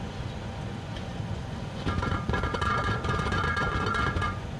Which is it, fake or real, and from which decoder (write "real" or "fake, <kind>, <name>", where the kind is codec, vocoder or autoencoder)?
fake, vocoder, Vocos